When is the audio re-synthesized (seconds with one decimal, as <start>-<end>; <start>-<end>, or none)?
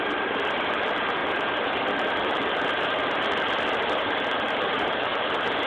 0.0-5.1